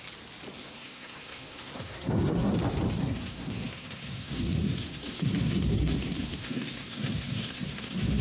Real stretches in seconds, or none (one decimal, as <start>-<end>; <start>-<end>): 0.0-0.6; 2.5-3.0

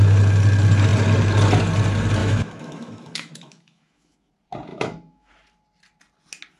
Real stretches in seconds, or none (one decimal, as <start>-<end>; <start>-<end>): 0.0-2.2; 4.3-4.7; 5.3-6.6

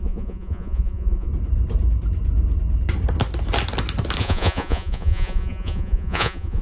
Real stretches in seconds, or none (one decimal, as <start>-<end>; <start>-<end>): 1.3-4.2

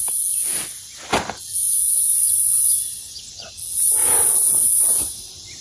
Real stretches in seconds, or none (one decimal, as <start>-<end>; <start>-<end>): 0.0-2.1; 3.2-5.6

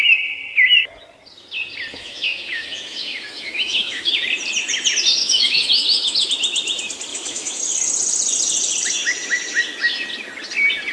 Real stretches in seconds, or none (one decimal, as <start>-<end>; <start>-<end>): 0.0-1.9; 4.1-5.2; 6.3-7.1; 7.6-10.9

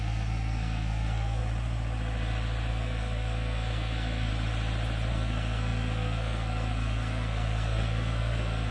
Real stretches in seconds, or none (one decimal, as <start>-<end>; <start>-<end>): 1.4-2.7; 4.3-5.1

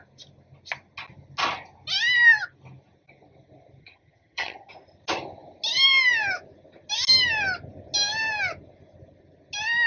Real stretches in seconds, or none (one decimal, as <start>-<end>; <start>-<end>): 0.0-3.8; 4.7-9.9

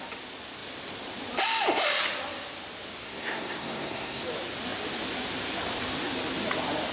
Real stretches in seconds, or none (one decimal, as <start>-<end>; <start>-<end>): 0.0-3.0; 4.2-6.9